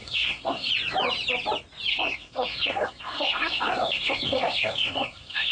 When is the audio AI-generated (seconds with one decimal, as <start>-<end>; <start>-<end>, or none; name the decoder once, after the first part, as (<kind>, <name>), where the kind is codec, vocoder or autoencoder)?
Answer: 0.0-0.7 (codec, SNAC); 1.9-5.5